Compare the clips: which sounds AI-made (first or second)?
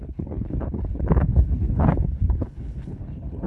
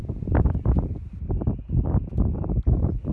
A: first